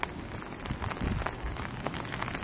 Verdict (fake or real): real